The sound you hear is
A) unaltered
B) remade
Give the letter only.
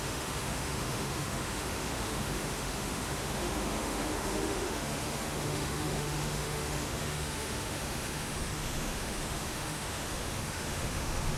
B